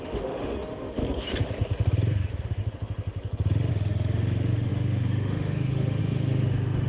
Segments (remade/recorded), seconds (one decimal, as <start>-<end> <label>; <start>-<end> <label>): 0.0-1.0 remade; 1.0-2.1 recorded; 2.1-2.6 remade; 2.6-3.7 recorded; 3.7-6.9 remade